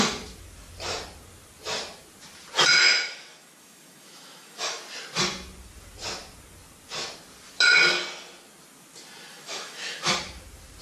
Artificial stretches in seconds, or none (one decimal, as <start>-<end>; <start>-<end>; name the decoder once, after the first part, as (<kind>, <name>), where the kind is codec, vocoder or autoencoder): 2.9-4.8 (autoencoder, DAC-VAE); 9.3-10.1